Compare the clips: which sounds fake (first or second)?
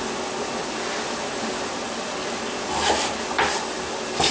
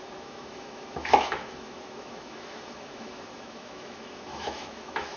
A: second